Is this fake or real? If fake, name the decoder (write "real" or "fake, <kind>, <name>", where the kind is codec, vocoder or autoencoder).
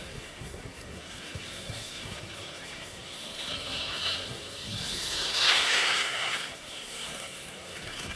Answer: fake, codec, SNAC